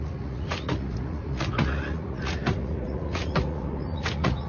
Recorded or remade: remade